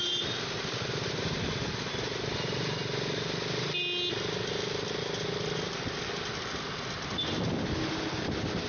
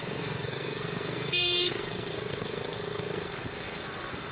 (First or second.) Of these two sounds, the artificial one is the second